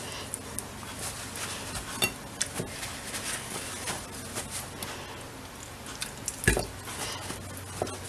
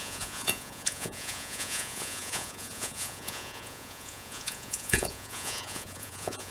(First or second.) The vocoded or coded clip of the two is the second